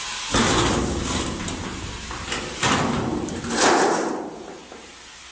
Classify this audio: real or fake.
real